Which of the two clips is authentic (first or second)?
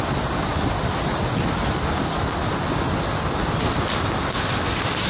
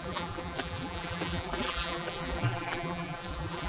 first